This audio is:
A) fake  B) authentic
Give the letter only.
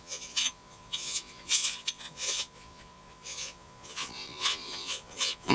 A